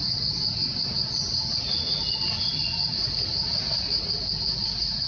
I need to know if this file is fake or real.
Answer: real